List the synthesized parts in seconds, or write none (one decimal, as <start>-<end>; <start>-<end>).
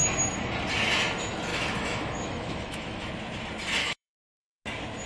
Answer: 1.5-3.1; 3.8-4.4